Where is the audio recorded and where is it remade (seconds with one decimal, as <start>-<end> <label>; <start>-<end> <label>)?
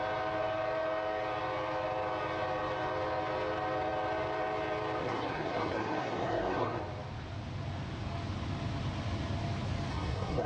0.0-5.0 recorded; 5.0-6.8 remade; 6.8-9.9 recorded; 9.9-10.5 remade